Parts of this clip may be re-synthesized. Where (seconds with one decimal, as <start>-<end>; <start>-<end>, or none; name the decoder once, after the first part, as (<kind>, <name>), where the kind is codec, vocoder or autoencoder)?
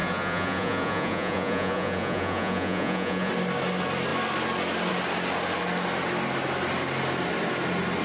0.0-3.3 (vocoder, Vocos)